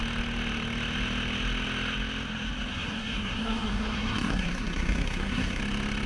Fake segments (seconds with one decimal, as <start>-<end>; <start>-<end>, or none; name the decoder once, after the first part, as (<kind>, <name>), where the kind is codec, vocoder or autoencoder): 2.7-5.6 (codec, SNAC)